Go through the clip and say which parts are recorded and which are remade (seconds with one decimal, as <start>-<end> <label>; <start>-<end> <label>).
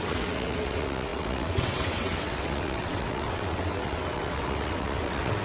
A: 0.0-5.4 remade